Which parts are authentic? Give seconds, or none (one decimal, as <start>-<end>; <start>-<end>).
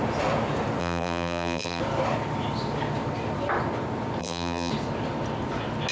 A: 0.0-0.8; 1.8-4.2; 4.7-5.9